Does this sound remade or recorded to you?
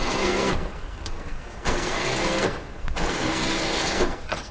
remade